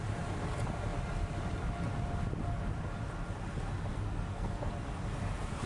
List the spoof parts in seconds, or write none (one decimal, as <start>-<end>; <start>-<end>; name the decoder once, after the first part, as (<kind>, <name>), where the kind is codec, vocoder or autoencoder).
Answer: 3.9-4.7 (codec, SNAC)